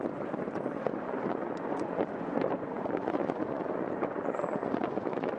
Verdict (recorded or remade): remade